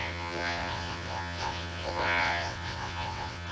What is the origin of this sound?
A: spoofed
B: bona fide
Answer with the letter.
A